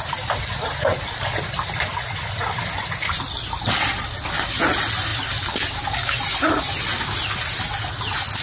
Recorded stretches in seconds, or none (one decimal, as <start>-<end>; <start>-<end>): 0.0-8.4